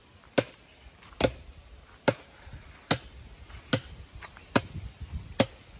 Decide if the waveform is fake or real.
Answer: real